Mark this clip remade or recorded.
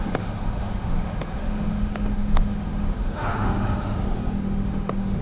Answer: remade